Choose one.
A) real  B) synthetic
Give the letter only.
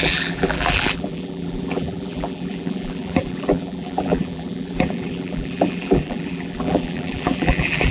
B